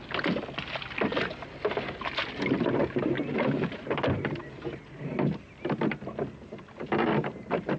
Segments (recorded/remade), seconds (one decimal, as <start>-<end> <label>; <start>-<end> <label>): 0.0-2.8 recorded; 2.8-4.4 remade; 4.4-7.8 recorded